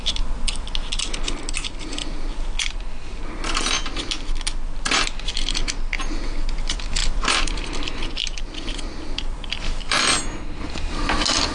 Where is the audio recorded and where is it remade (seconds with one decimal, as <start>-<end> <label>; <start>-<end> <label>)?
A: 0.0-11.5 recorded